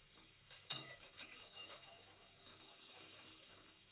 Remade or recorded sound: remade